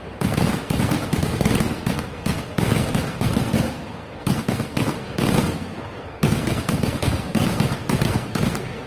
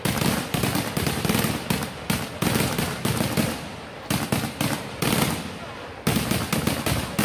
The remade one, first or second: first